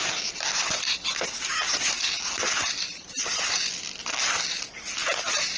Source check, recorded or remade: recorded